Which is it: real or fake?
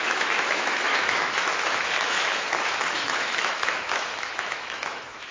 fake